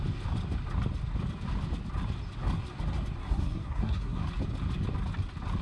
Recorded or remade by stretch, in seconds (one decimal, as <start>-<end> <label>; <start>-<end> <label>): 0.0-3.2 recorded; 3.2-4.2 remade; 4.2-5.6 recorded